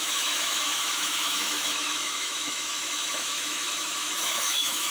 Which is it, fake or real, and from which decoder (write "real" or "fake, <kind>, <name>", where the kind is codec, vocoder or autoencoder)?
fake, autoencoder, DAC-VAE